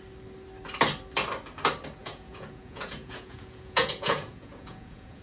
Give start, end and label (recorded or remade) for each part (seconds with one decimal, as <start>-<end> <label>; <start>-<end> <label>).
0.0-2.0 recorded; 2.0-5.2 remade